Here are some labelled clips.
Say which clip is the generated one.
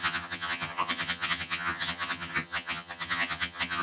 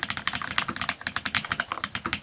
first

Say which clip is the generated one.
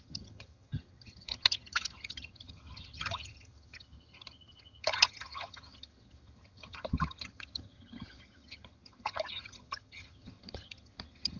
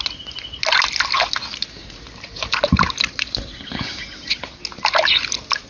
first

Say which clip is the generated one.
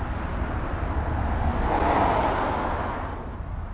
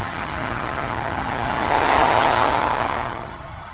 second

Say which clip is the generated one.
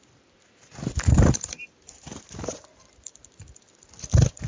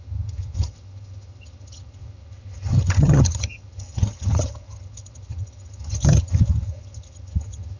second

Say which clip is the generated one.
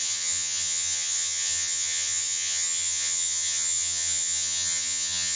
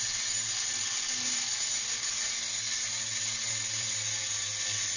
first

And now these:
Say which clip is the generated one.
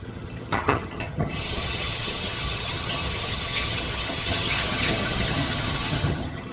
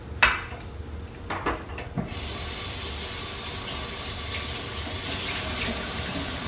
first